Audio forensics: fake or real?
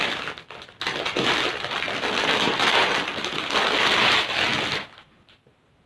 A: real